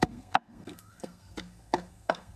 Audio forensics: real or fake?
fake